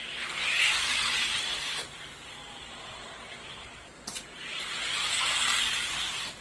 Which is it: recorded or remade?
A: remade